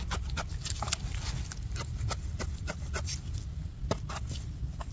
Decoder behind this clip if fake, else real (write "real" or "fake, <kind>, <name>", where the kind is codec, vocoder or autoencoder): real